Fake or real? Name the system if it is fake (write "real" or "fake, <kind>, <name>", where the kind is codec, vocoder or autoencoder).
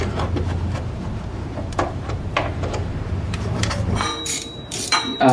fake, vocoder, BigVGAN v2